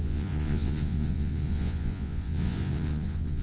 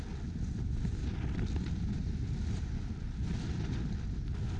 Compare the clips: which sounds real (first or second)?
second